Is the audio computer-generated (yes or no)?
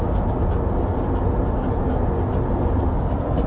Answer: no